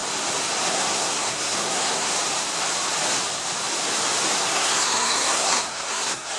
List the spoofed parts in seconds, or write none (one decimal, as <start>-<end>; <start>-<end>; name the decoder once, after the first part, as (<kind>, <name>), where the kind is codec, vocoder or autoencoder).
0.7-2.1 (codec, SNAC); 4.4-6.4